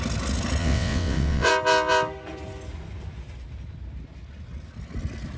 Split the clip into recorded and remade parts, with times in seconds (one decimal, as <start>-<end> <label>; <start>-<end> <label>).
0.0-0.6 recorded; 0.6-1.5 remade; 1.5-5.4 recorded